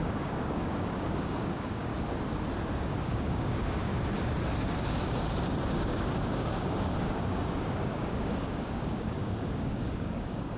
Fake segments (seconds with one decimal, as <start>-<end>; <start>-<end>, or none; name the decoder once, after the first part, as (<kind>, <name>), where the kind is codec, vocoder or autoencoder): 0.0-1.9 (codec, DAC); 2.8-3.9; 5.7-10.6